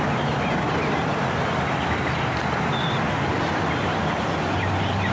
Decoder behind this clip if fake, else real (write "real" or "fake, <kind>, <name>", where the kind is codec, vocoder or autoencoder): real